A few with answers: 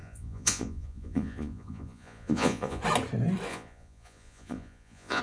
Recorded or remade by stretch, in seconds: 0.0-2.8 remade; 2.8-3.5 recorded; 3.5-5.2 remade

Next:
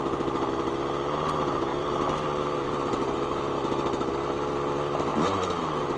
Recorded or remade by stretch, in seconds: 0.0-1.7 recorded; 1.7-3.4 remade; 3.4-5.1 recorded; 5.1-6.0 remade

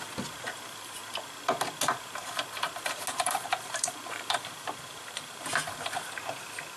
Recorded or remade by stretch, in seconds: 0.0-3.1 recorded; 3.1-6.0 remade; 6.0-6.8 recorded